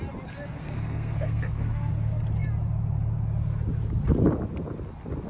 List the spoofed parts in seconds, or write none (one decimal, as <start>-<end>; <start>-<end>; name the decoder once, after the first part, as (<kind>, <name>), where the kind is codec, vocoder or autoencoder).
0.6-1.9 (codec, SNAC)